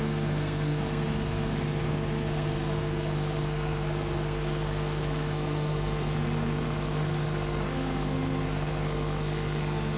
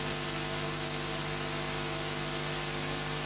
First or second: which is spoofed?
first